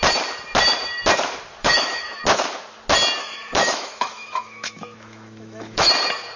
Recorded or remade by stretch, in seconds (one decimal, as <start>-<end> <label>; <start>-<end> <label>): 0.0-1.6 recorded; 1.6-2.2 remade; 2.2-3.2 recorded; 3.2-5.9 remade; 5.9-6.4 recorded